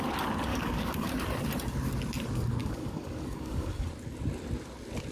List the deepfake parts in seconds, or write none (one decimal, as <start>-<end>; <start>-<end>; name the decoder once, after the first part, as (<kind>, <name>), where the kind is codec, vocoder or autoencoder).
0.5-1.1 (codec, DAC); 2.6-3.9

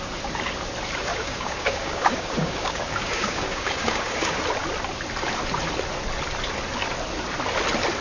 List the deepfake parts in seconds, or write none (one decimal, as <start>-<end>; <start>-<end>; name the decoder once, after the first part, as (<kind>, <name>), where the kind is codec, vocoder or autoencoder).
1.1-4.4 (codec, DAC)